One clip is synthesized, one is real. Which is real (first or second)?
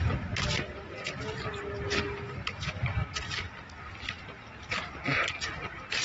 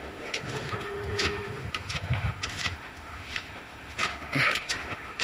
first